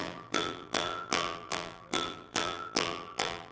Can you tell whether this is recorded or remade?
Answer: remade